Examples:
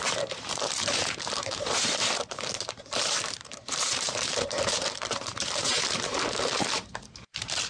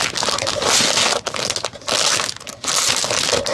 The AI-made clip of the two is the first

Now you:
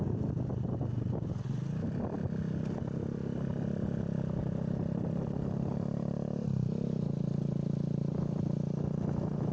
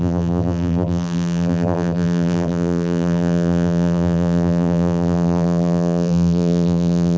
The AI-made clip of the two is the second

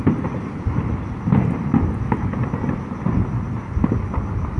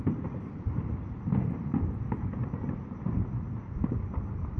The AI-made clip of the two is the second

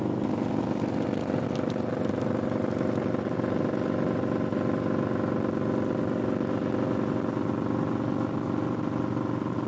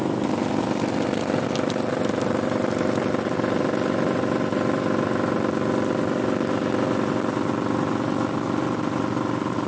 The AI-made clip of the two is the second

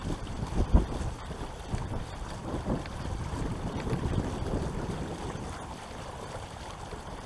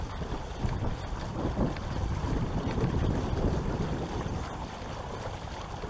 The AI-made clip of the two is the first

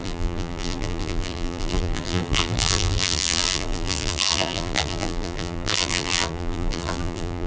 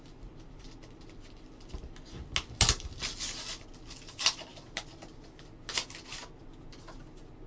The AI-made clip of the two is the first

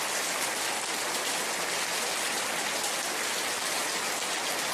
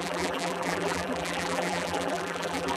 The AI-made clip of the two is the second